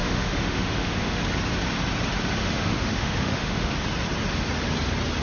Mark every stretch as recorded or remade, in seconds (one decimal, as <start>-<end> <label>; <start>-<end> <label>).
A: 0.0-1.2 remade; 1.2-2.4 recorded; 2.4-3.7 remade; 3.7-5.2 recorded